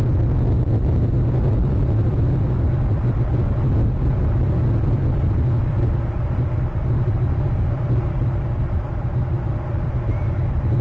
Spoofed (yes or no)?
no